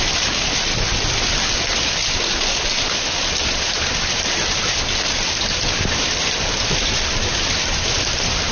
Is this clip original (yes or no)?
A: yes